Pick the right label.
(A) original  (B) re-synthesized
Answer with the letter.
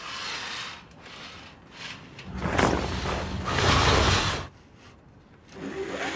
A